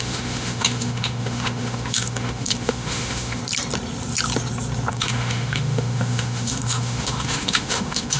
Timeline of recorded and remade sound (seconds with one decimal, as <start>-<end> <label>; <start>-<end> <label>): 0.0-3.4 remade; 3.4-4.9 recorded; 4.9-8.2 remade